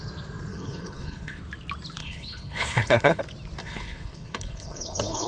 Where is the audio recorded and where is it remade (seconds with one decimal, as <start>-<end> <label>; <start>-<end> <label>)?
0.0-0.5 recorded; 0.5-1.4 remade; 1.4-2.0 recorded; 2.0-3.2 remade; 3.2-3.6 recorded; 3.6-5.3 remade